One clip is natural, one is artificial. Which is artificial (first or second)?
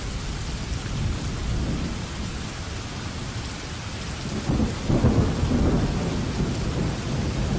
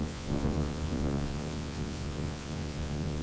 second